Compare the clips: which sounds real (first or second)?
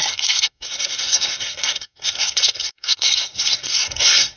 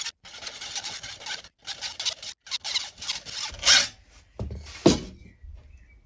second